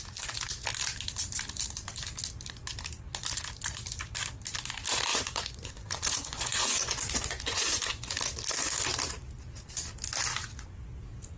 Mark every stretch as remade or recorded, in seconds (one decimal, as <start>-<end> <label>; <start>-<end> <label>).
0.0-5.1 recorded; 5.1-8.1 remade; 8.1-11.4 recorded